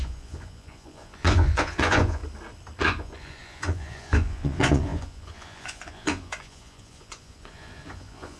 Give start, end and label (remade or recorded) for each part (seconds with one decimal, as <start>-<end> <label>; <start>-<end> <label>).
0.0-2.2 remade; 2.2-2.8 recorded; 2.8-8.4 remade